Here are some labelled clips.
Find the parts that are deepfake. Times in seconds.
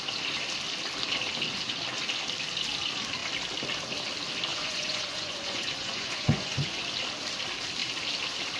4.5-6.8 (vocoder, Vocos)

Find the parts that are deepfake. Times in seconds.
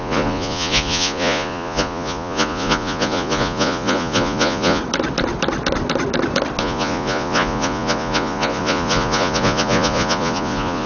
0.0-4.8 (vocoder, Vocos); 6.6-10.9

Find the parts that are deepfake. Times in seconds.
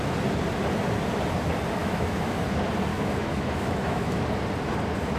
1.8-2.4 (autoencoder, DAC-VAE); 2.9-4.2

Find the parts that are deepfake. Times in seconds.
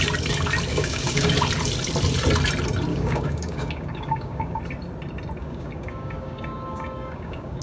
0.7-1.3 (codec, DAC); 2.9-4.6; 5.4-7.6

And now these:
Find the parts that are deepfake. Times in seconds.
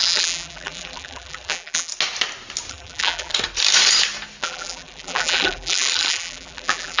0.0-1.9 (vocoder, BigVGAN v2); 2.7-3.3; 4.4-7.0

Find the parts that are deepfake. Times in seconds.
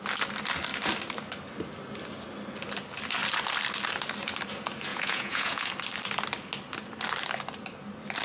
4.9-5.7 (vocoder, Vocos)